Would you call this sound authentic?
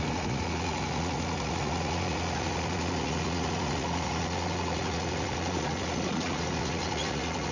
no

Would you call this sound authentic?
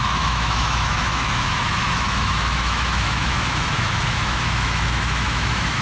no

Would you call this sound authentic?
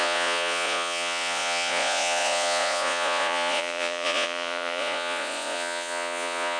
no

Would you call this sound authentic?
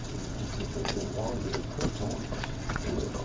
no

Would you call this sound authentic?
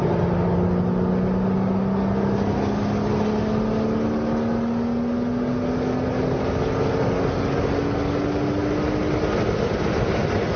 yes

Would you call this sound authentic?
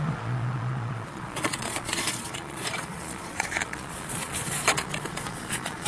no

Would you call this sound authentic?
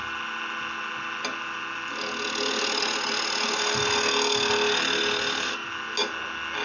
yes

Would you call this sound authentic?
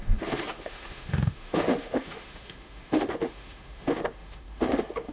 no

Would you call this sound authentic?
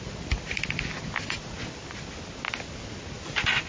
yes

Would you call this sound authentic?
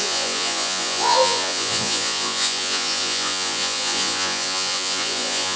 no